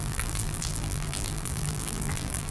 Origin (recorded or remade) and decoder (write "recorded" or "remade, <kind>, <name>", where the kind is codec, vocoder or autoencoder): remade, vocoder, BigVGAN v2